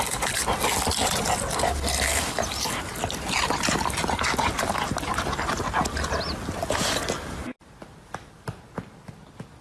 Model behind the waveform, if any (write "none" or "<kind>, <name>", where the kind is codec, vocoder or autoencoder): none